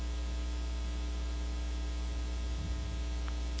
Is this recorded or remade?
recorded